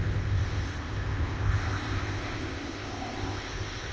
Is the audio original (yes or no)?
no